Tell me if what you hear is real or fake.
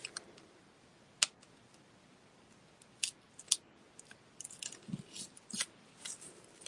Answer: real